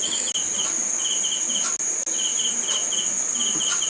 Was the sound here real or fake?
real